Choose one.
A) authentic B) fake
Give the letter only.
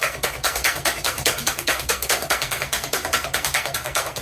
B